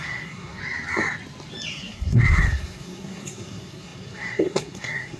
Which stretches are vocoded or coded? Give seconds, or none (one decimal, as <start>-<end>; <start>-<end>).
0.0-0.6; 1.7-5.2